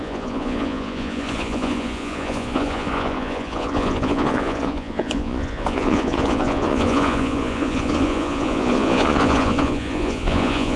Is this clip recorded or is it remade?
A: remade